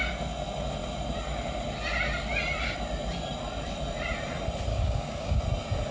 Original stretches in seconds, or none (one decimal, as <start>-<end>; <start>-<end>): 0.0-4.7; 5.4-5.9